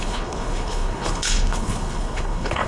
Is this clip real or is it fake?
fake